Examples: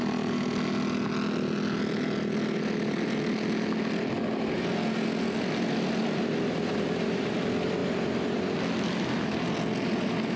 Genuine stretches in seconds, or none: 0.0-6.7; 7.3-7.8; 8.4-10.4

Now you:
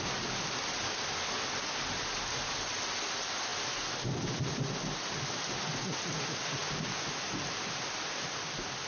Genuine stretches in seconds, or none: 0.0-8.9

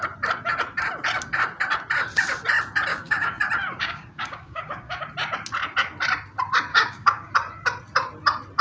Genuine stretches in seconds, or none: 0.0-2.9; 3.4-3.8; 5.0-6.7; 7.3-8.6

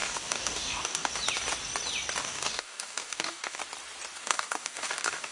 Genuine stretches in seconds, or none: 1.1-2.2; 3.6-4.2

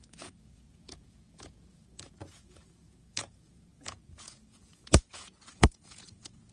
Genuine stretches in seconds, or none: none